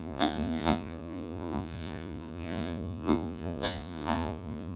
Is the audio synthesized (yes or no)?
yes